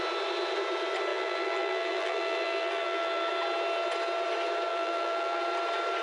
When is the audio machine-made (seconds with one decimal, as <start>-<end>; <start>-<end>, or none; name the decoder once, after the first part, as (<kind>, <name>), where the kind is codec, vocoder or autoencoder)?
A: 1.1-3.3 (vocoder, BigVGAN v2); 4.7-5.4